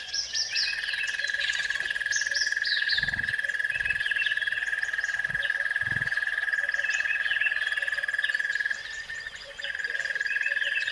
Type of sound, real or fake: fake